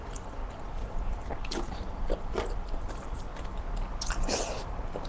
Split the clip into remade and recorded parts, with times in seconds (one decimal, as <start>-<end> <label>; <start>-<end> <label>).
0.0-5.1 recorded

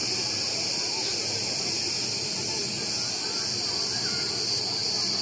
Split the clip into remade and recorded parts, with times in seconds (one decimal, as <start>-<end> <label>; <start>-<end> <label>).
0.0-5.2 recorded

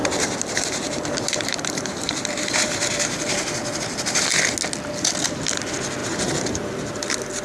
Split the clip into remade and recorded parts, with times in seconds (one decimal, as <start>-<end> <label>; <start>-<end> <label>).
0.0-4.2 remade; 4.2-6.0 recorded; 6.0-6.6 remade; 6.6-7.4 recorded

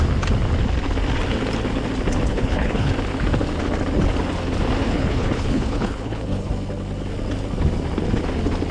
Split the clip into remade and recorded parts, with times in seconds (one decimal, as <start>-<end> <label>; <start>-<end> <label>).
0.0-2.3 recorded; 2.3-2.9 remade; 2.9-4.8 recorded; 4.8-6.5 remade; 6.5-8.7 recorded

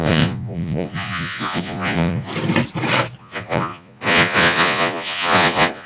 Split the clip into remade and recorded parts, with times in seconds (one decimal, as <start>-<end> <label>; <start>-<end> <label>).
0.0-2.3 remade; 2.3-3.2 recorded; 3.2-5.9 remade

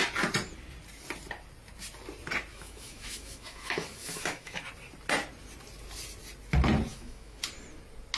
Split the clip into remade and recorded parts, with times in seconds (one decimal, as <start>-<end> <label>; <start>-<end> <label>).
0.0-2.5 recorded; 2.5-4.6 remade; 4.6-6.9 recorded; 6.9-7.4 remade; 7.4-8.2 recorded